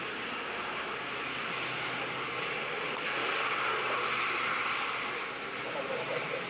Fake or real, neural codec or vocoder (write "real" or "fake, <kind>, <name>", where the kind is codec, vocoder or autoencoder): real